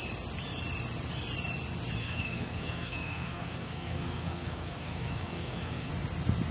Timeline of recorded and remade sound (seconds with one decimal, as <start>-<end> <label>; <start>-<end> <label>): 0.0-2.0 recorded; 2.0-5.9 remade; 5.9-6.5 recorded